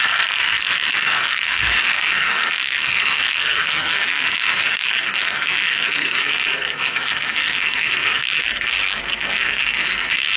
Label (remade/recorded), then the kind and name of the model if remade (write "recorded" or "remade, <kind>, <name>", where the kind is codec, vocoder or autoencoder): remade, codec, SNAC